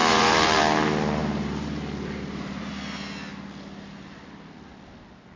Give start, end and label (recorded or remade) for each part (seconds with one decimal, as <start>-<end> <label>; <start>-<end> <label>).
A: 0.0-0.6 remade; 0.6-1.2 recorded; 1.2-2.7 remade; 2.7-5.4 recorded